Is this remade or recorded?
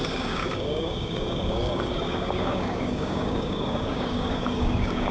remade